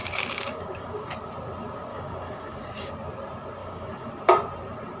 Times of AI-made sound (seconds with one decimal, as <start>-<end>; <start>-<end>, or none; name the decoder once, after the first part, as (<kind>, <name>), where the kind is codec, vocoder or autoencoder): 0.0-1.1 (codec, DAC); 1.9-2.9; 3.6-4.1

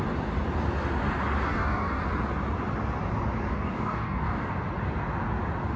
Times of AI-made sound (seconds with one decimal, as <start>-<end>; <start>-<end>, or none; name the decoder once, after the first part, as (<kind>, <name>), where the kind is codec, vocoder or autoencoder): 1.5-2.0 (codec, DAC); 3.5-4.5

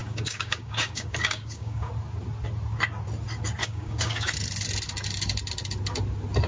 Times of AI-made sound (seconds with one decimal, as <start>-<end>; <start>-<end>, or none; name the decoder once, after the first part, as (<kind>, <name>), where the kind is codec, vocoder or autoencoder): 0.0-1.9 (codec, DAC); 3.6-4.3

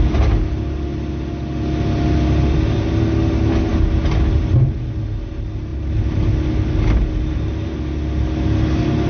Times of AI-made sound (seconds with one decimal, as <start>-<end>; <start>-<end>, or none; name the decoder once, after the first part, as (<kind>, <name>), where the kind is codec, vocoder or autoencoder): none

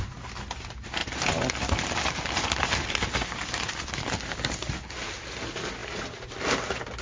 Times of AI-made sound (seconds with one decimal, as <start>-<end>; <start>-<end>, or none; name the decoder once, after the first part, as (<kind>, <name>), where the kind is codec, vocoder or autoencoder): none

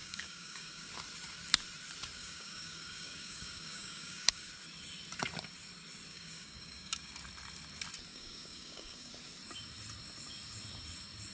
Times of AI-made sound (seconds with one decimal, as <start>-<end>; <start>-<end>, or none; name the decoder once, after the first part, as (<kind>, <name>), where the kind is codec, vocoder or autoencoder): 0.0-0.9 (codec, DAC); 2.2-4.5; 6.1-7.1; 8.1-9.1